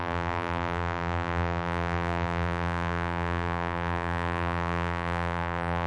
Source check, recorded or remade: remade